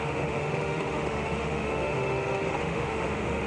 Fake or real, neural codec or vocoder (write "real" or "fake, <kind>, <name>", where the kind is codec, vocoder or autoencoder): fake, autoencoder, DAC-VAE